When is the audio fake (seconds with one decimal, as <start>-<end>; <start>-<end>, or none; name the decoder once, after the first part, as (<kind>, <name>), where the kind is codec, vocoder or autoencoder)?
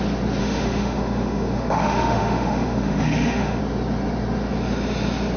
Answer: 0.4-3.6 (autoencoder, DAC-VAE)